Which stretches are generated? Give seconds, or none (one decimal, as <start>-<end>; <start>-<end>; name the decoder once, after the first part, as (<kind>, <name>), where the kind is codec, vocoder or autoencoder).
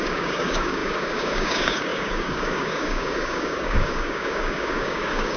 0.0-5.4 (codec, DAC)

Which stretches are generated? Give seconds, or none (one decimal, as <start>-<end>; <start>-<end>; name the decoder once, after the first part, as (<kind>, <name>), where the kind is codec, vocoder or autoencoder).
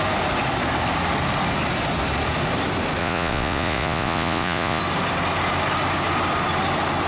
3.0-4.8 (vocoder, Vocos)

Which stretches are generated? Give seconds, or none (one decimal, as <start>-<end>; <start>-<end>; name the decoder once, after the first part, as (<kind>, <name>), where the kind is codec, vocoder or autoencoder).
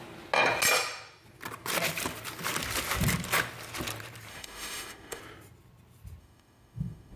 4.3-5.2 (autoencoder, DAC-VAE); 6.2-7.2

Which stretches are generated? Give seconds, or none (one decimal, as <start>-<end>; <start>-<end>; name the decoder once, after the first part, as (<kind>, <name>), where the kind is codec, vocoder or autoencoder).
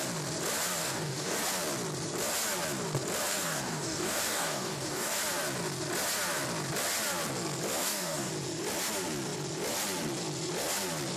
0.8-1.4 (codec, DAC); 3.3-5.2; 7.8-8.3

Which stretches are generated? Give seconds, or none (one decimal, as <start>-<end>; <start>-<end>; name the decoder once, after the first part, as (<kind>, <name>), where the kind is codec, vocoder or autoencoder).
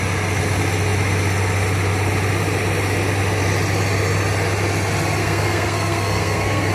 5.2-6.7 (codec, SNAC)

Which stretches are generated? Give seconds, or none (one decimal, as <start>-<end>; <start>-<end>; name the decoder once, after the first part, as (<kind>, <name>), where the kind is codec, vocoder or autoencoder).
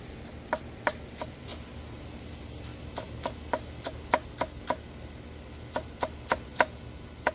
0.0-1.5 (vocoder, BigVGAN v2); 2.3-2.7; 5.9-7.3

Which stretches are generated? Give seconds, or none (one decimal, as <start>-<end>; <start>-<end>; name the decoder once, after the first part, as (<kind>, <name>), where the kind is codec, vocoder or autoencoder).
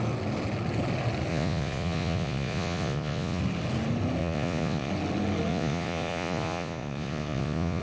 1.3-3.4 (vocoder, Vocos); 4.2-4.9; 5.5-7.8